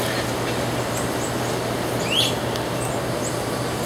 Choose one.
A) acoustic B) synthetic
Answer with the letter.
A